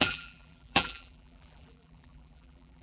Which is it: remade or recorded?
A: remade